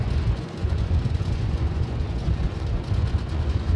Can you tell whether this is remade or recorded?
remade